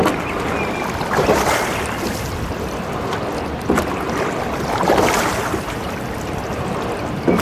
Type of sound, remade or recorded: recorded